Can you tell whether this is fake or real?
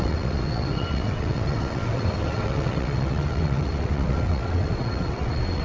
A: fake